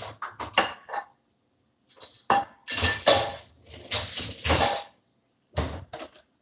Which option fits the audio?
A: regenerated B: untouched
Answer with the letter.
B